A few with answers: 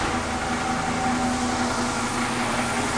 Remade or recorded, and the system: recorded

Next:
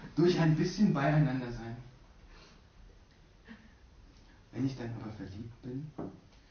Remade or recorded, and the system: recorded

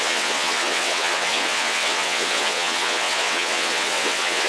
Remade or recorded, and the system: remade, vocoder, WaveNeXt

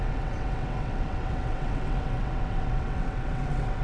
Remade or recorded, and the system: remade, vocoder, WaveNeXt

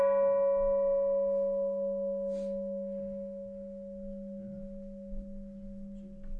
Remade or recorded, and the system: recorded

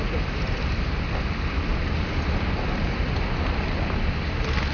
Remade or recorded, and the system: recorded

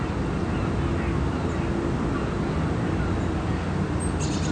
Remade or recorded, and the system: recorded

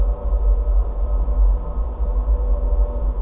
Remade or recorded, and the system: recorded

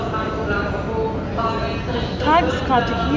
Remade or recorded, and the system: recorded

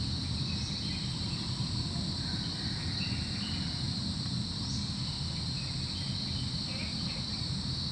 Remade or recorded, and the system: recorded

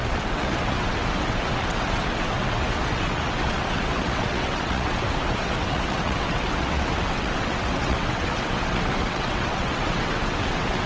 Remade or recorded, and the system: remade, vocoder, WaveNeXt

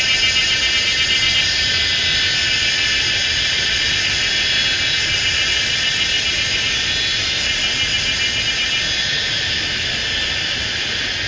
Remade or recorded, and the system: recorded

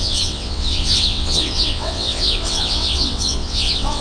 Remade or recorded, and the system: remade, vocoder, WaveNeXt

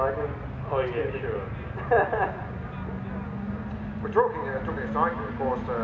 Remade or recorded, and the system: recorded